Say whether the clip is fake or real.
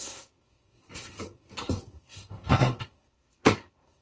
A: fake